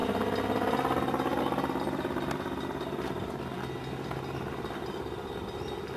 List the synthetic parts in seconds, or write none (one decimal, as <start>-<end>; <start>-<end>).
none